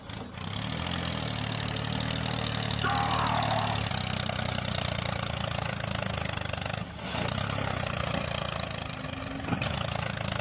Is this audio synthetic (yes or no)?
no